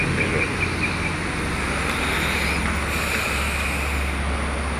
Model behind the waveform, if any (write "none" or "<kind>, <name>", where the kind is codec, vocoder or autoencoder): none